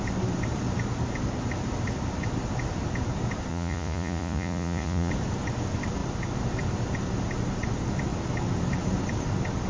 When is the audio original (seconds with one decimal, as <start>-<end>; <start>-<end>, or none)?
0.0-3.5; 5.1-9.7